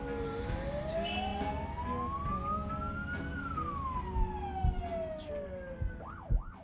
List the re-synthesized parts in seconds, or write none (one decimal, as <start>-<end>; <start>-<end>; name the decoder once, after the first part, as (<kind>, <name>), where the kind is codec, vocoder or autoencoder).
none